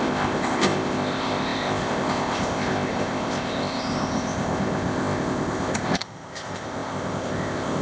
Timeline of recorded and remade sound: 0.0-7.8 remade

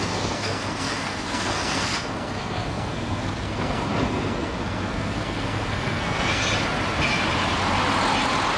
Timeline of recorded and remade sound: 0.0-6.4 remade; 6.4-8.6 recorded